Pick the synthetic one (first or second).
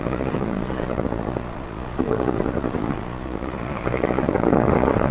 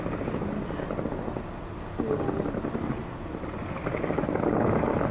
first